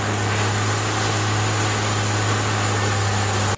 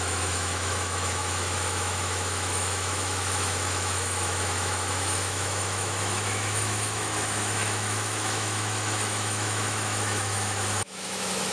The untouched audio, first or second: first